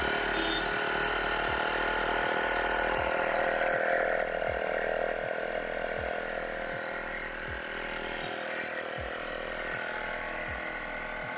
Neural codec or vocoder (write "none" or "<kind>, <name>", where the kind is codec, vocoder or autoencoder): none